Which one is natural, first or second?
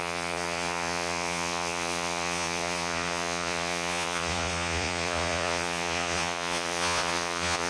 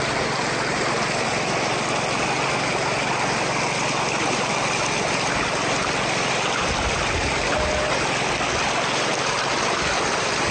second